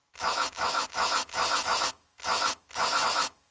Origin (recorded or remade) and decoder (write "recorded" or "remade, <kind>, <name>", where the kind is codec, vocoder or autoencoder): remade, autoencoder, DAC-VAE